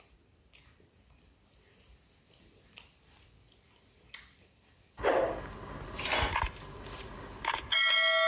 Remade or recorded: recorded